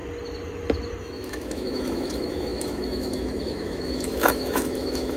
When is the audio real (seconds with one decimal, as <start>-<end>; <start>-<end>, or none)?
0.0-1.0